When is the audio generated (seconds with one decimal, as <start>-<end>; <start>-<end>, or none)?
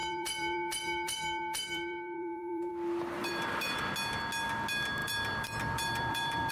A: 0.0-2.7; 3.2-3.8; 5.0-6.5